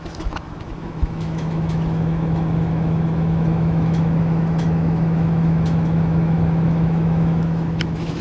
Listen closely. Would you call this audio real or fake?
fake